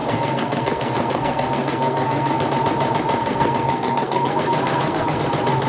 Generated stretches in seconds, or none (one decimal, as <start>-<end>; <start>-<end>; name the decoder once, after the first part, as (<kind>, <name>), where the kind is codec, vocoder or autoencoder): 0.0-2.5 (codec, SNAC); 3.2-5.2